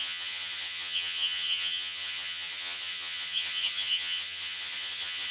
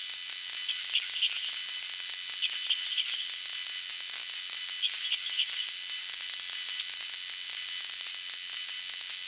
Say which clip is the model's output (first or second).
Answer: first